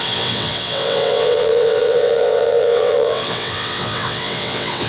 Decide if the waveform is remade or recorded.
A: remade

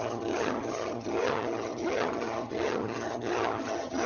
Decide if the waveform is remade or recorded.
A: remade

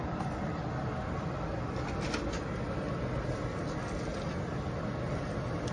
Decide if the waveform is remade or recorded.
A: recorded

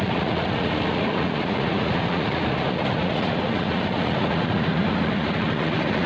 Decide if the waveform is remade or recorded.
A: remade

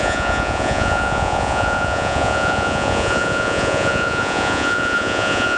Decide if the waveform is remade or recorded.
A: remade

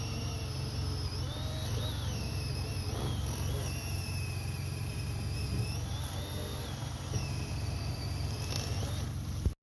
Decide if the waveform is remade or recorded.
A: recorded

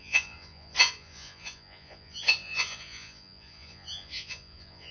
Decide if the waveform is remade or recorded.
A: remade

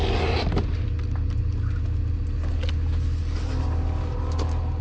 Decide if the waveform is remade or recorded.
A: recorded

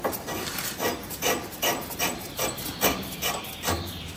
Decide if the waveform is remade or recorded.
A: recorded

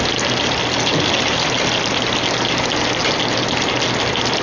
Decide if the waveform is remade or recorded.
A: recorded